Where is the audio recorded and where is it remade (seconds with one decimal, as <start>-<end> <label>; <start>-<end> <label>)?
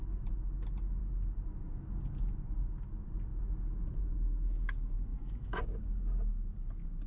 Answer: 0.0-5.1 recorded; 5.1-5.6 remade; 5.6-7.1 recorded